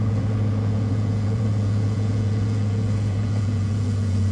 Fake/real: fake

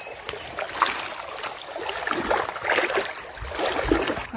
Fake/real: real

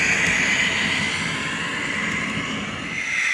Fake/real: real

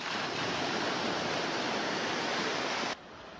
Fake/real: real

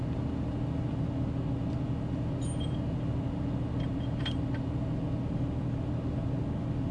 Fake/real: real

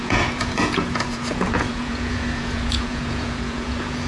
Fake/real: fake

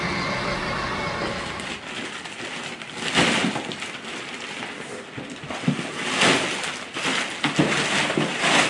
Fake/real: real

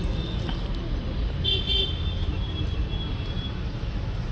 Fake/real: real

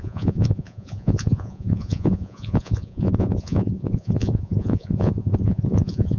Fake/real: fake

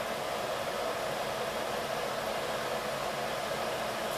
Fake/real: real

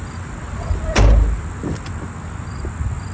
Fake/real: real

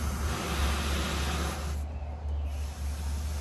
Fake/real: real